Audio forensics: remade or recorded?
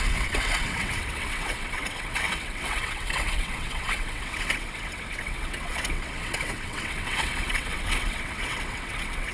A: remade